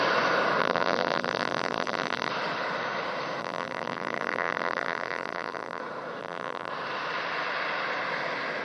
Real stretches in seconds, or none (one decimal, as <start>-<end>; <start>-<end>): 0.0-0.6; 2.3-3.4; 5.8-6.2; 6.7-8.6